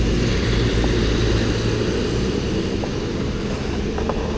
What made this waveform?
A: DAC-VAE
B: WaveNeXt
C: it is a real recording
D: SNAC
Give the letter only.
C